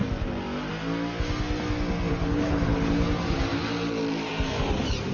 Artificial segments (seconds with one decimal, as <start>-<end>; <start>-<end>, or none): 2.1-2.9